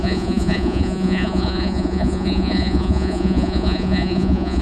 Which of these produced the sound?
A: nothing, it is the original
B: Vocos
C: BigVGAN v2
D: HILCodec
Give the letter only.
B